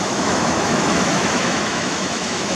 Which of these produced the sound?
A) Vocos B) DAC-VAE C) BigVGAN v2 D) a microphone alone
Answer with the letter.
B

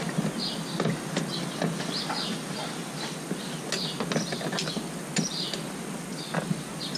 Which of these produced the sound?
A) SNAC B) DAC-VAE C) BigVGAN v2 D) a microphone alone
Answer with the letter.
D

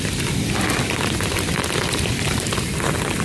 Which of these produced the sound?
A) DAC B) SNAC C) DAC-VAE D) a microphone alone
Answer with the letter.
D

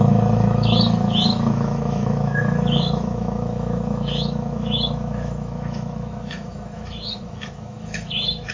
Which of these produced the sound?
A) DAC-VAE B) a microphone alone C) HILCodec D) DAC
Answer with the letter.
A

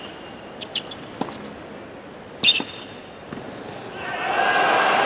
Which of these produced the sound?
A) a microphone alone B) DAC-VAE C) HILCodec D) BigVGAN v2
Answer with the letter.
A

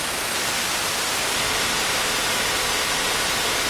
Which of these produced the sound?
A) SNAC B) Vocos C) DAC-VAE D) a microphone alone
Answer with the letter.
D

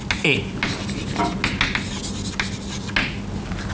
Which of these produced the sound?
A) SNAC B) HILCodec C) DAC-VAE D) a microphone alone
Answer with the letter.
D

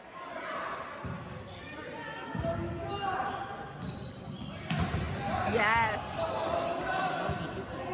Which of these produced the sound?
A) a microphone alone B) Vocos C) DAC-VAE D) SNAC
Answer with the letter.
A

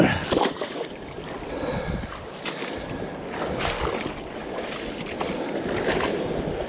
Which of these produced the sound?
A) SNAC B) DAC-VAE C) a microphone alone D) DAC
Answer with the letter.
C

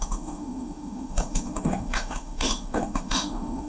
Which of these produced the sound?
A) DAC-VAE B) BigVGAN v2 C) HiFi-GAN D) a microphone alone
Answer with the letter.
A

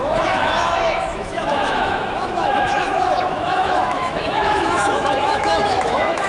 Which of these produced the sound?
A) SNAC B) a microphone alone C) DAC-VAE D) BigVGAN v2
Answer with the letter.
C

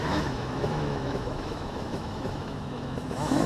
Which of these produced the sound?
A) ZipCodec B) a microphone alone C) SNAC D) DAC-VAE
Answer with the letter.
D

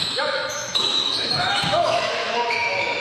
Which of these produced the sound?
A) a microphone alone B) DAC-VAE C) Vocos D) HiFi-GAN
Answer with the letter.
B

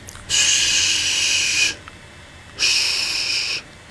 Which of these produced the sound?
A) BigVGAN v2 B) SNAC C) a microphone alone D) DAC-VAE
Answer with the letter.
C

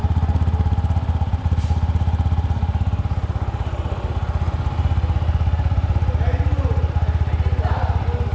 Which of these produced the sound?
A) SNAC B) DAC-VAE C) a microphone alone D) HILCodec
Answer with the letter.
C